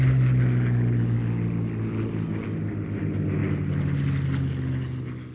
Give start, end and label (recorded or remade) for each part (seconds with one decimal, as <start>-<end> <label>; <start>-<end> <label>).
0.0-5.3 recorded

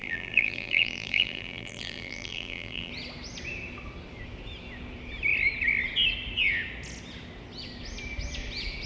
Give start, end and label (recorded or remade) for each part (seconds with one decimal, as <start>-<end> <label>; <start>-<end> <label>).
0.0-2.9 remade; 2.9-8.9 recorded

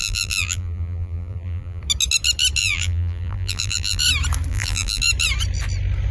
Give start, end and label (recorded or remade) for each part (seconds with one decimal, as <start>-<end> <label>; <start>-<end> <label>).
0.0-1.8 remade; 1.8-2.6 recorded; 2.6-4.0 remade; 4.0-4.5 recorded; 4.5-5.0 remade; 5.0-6.1 recorded

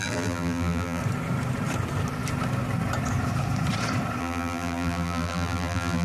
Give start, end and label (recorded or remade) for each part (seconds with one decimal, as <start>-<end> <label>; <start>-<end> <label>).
0.0-1.0 remade; 1.0-4.2 recorded; 4.2-6.0 remade